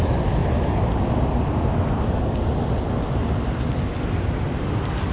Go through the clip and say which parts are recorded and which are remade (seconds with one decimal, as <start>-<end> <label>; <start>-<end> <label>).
0.0-5.1 recorded